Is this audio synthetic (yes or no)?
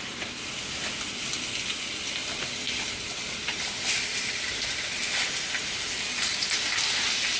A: no